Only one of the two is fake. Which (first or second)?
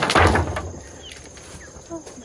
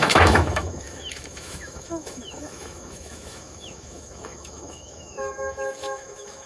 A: second